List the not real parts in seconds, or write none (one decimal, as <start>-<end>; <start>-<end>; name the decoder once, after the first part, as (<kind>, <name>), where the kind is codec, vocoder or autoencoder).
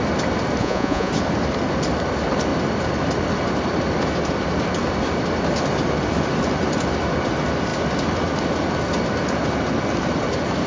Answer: 0.6-1.1 (vocoder, Vocos)